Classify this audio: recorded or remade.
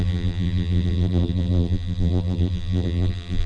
remade